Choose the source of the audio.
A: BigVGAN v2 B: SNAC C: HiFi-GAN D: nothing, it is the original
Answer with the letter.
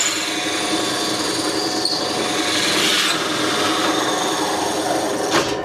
D